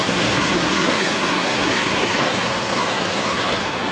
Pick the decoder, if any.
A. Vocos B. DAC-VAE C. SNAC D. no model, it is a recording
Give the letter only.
C